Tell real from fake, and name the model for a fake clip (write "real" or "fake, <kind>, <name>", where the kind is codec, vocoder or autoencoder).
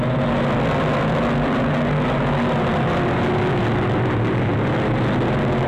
real